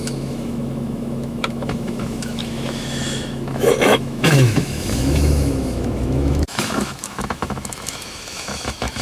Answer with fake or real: fake